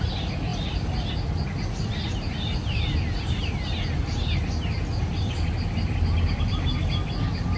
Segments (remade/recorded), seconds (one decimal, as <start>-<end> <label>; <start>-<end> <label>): 0.0-0.5 recorded; 0.5-1.1 remade; 1.1-7.6 recorded

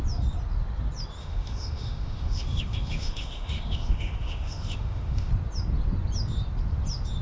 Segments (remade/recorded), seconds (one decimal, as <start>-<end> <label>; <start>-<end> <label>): 0.0-1.2 recorded; 1.2-5.3 remade; 5.3-7.2 recorded

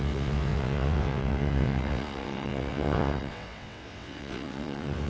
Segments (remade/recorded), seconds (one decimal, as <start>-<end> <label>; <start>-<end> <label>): 0.0-5.1 remade

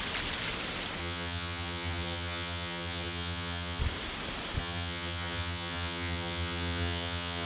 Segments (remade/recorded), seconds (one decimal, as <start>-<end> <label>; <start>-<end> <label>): 0.0-1.0 recorded; 1.0-3.8 remade; 3.8-4.6 recorded; 4.6-7.5 remade

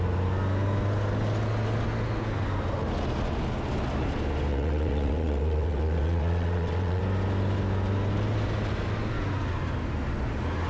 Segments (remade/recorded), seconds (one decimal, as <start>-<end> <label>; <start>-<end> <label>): 0.0-4.5 recorded; 4.5-7.0 remade; 7.0-10.7 recorded

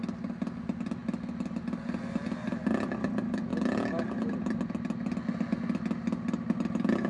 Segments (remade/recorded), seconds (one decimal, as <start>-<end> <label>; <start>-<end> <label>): 0.0-7.1 recorded